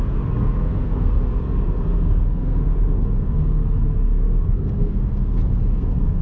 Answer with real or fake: fake